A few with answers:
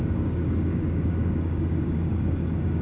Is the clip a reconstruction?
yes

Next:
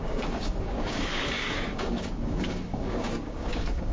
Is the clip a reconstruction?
yes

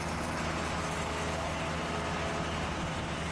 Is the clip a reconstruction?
no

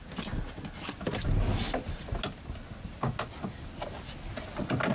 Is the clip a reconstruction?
no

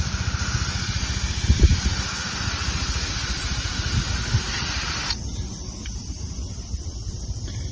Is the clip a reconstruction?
no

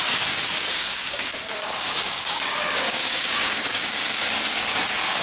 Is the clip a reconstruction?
yes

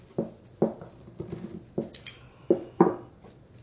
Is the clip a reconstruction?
no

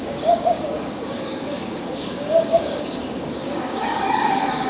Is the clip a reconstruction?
yes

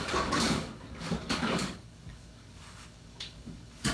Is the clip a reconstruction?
yes